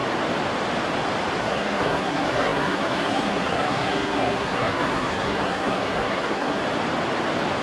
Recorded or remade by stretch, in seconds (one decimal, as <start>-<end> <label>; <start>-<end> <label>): 0.0-1.4 recorded; 1.4-6.6 remade; 6.6-7.6 recorded